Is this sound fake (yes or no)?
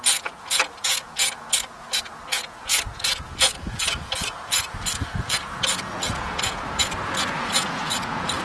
yes